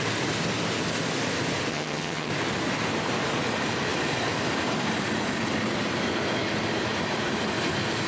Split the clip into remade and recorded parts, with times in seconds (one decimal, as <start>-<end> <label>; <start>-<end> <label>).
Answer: 0.0-1.7 recorded; 1.7-2.3 remade; 2.3-8.1 recorded